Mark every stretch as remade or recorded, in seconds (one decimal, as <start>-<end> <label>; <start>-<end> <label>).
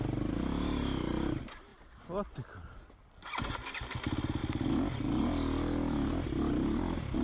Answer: 0.0-7.2 recorded